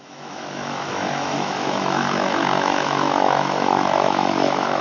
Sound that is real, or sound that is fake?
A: fake